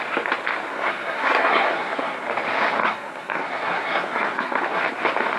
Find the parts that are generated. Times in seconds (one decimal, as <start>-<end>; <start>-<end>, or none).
0.7-2.2; 2.8-4.8